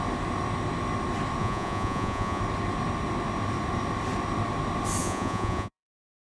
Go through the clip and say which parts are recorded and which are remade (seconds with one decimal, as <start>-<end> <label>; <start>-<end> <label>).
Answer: 0.0-1.4 recorded; 1.4-2.4 remade; 2.4-5.0 recorded; 5.0-6.3 remade